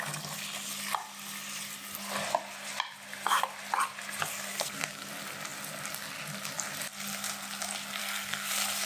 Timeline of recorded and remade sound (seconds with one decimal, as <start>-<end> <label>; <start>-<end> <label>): 0.0-4.5 recorded; 4.5-5.1 remade; 5.1-8.0 recorded; 8.0-8.5 remade; 8.5-8.9 recorded